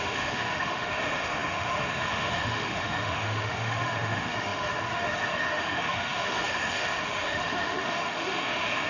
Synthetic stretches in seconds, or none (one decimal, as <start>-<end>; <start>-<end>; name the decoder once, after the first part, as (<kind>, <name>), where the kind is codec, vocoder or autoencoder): 0.0-8.9 (autoencoder, DAC-VAE)